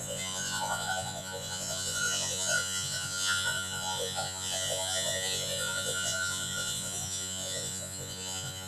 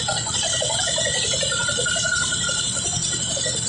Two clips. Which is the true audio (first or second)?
second